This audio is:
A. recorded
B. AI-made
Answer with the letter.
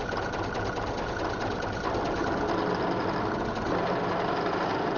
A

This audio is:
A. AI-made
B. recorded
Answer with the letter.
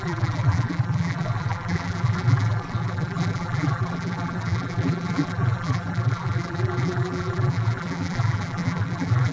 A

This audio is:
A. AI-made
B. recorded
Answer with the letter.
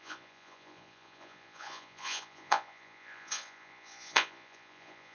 A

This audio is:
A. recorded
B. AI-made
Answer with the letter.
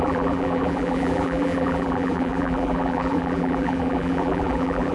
B